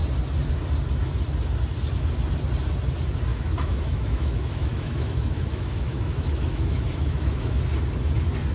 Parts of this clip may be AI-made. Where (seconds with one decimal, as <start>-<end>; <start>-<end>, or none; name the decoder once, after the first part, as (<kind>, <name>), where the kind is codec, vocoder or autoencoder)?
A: 3.3-7.6 (autoencoder, DAC-VAE)